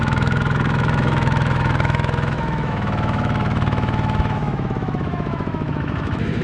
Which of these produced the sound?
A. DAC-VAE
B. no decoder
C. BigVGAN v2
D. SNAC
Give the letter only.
A